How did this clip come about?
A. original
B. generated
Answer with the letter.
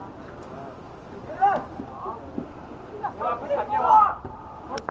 A